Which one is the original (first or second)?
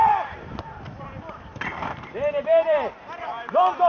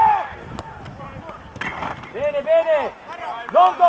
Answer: second